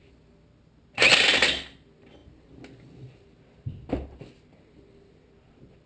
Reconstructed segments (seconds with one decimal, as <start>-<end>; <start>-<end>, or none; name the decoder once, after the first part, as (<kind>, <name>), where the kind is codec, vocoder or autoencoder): none